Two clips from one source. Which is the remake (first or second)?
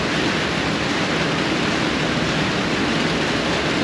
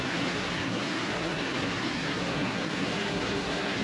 second